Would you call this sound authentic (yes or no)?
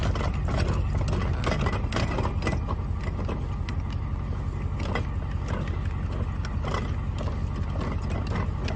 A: yes